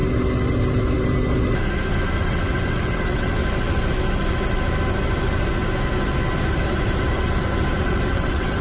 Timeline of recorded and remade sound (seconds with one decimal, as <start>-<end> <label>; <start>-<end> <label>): 0.0-2.2 recorded; 2.2-3.4 remade; 3.4-7.8 recorded; 7.8-8.6 remade